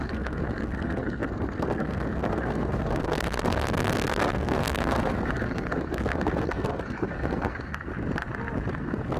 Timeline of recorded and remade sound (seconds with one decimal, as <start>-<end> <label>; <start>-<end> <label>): 0.0-7.9 remade; 7.9-8.7 recorded; 8.7-9.2 remade